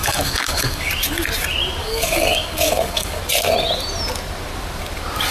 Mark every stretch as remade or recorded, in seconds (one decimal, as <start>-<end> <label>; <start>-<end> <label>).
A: 0.0-0.9 remade; 0.9-1.8 recorded; 1.8-3.2 remade; 3.2-5.3 recorded